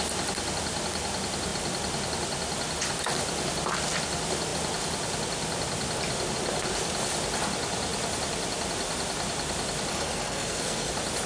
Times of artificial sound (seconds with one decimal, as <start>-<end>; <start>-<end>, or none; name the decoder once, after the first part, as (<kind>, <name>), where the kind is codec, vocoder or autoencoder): 9.9-10.9 (codec, SNAC)